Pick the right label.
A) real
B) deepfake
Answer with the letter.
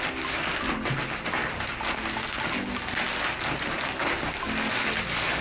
A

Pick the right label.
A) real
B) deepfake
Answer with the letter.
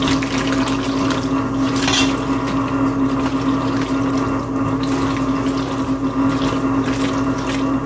A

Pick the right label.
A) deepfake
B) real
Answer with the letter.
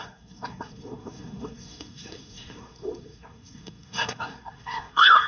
A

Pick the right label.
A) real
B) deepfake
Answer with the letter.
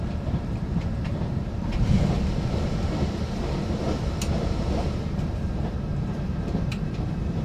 B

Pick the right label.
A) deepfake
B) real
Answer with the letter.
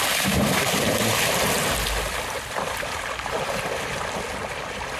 B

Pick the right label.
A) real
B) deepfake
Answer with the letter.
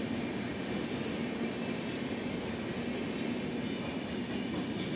A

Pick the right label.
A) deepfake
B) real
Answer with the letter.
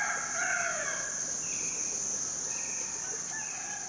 B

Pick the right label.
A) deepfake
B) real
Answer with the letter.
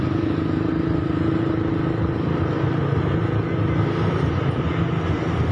B